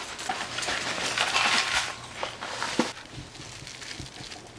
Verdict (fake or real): real